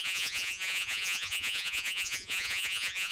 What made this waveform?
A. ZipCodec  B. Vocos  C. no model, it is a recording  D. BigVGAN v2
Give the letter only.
B